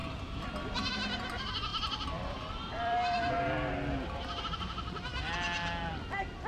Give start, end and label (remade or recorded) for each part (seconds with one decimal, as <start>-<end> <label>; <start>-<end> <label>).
0.0-0.9 remade; 0.9-1.7 recorded; 1.7-3.7 remade; 3.7-6.5 recorded